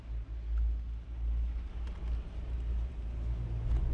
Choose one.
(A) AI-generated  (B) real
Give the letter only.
B